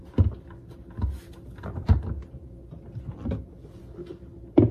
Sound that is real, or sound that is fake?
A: real